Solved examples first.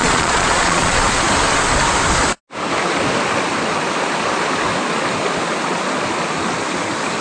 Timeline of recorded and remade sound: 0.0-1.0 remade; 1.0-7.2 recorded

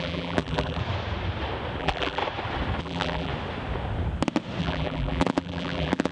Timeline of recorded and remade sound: 0.0-0.8 remade; 0.8-1.8 recorded; 1.8-2.2 remade; 2.2-2.8 recorded; 2.8-3.3 remade; 3.3-4.6 recorded; 4.6-6.1 remade

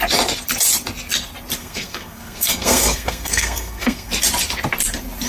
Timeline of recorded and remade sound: 0.0-1.6 recorded; 1.6-4.1 remade; 4.1-5.3 recorded

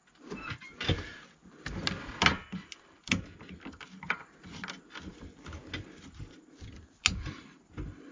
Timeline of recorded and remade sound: 0.0-8.1 recorded

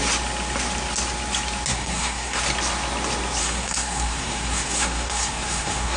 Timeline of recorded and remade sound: 0.0-1.7 recorded; 1.7-2.4 remade; 2.4-3.4 recorded; 3.4-6.0 remade